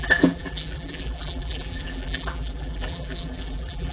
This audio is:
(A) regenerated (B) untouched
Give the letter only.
A